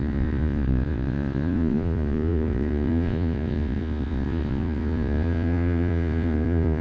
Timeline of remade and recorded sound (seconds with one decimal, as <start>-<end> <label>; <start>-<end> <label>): 0.0-6.8 remade